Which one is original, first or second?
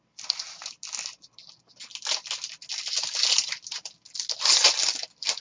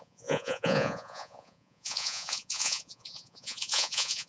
first